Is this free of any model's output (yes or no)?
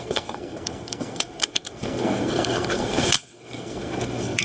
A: no